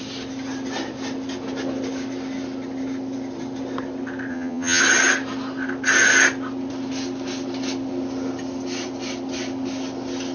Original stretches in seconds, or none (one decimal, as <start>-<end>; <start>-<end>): 0.0-4.3; 4.8-10.3